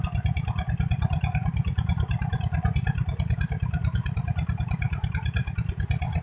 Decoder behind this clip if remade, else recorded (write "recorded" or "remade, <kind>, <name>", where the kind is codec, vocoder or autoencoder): recorded